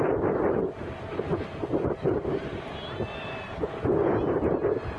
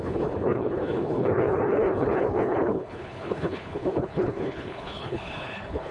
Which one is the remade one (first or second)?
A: second